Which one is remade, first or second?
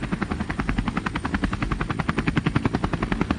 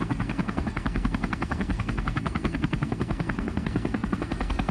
second